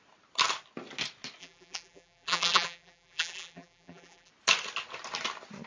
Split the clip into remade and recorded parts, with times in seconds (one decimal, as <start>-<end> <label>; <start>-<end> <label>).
0.0-1.4 recorded; 1.4-4.3 remade; 4.3-5.7 recorded

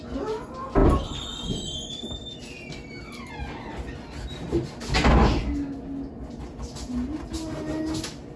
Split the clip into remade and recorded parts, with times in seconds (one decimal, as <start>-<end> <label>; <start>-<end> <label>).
0.0-0.8 recorded; 0.8-3.3 remade; 3.3-8.4 recorded